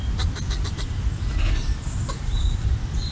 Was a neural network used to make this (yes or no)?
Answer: no